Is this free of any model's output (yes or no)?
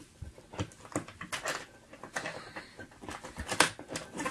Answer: yes